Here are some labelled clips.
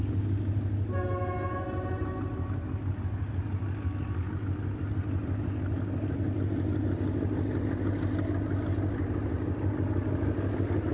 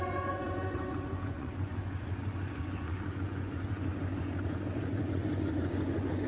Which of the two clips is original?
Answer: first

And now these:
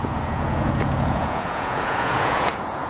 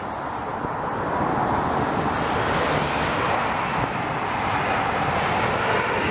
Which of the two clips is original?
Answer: second